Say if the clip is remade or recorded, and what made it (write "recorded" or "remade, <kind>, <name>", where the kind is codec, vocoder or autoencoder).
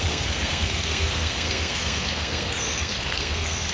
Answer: remade, codec, SNAC